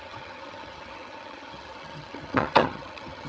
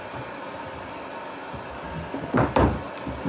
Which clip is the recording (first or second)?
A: second